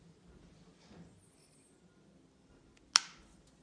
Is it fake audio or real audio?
real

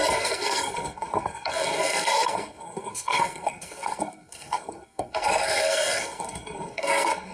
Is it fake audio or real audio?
fake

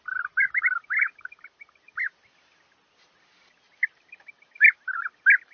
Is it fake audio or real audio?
real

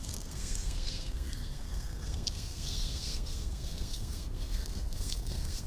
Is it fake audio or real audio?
fake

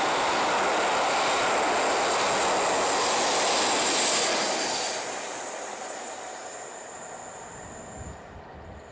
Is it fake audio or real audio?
real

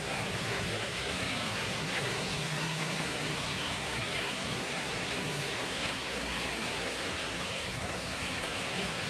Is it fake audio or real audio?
fake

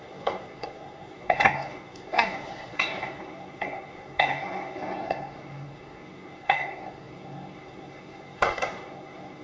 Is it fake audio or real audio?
fake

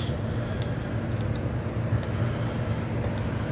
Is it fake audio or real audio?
real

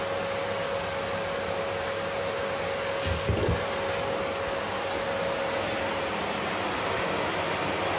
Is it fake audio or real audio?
real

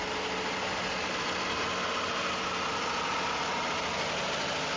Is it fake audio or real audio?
real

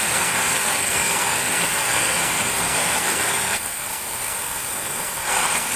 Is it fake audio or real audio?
fake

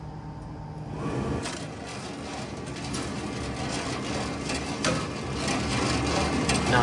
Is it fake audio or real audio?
real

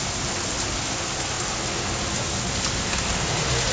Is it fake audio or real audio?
real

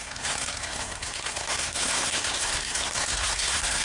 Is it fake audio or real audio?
fake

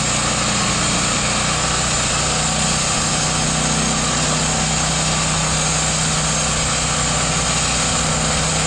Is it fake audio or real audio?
real